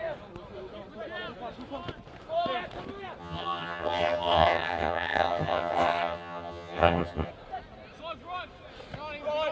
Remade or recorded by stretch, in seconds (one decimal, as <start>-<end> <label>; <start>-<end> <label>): 0.0-3.2 recorded; 3.2-7.3 remade; 7.3-9.5 recorded